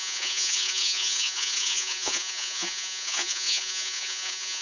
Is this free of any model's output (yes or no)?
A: no